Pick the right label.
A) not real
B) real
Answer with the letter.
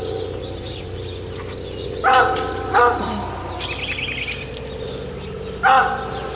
B